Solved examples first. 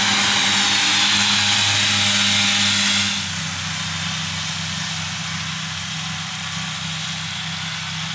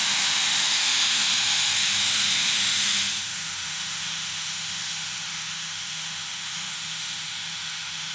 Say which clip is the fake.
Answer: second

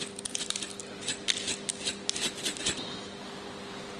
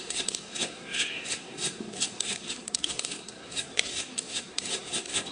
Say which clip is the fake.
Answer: second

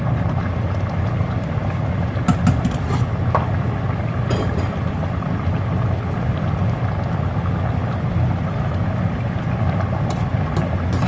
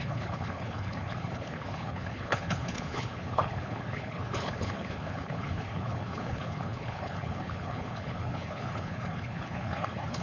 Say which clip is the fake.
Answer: second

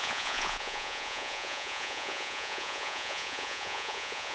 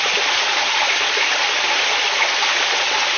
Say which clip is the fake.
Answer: first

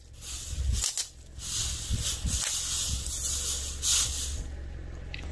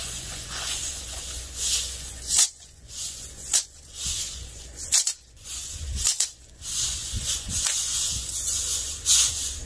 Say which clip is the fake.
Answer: second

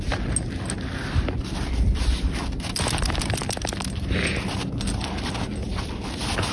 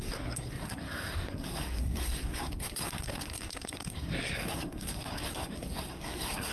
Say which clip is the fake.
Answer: second